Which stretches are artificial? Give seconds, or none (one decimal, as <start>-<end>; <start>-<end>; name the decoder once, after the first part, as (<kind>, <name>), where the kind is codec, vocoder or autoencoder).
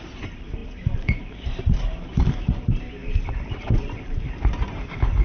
0.0-3.0 (vocoder, BigVGAN v2); 3.5-5.2